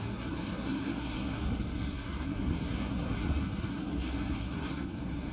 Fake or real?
fake